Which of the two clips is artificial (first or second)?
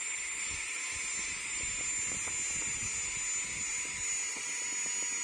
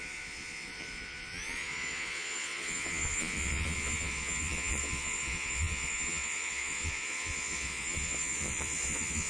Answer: second